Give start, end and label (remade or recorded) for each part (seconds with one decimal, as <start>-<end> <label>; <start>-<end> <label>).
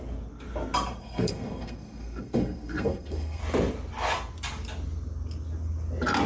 0.0-1.0 recorded; 1.0-3.4 remade; 3.4-6.3 recorded